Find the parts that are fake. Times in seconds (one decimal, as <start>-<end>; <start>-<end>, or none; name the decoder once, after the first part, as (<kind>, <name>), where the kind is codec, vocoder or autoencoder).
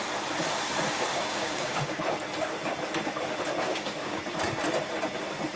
1.1-2.0 (codec, DAC); 3.7-4.2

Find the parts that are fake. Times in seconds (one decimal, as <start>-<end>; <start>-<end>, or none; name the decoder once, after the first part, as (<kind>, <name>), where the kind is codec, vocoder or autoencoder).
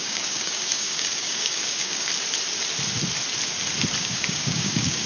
0.0-2.1 (codec, DAC); 4.0-5.1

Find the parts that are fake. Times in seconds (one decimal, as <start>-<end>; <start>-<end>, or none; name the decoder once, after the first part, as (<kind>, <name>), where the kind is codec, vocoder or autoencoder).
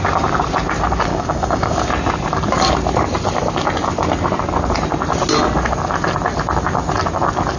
1.1-1.9 (codec, DAC)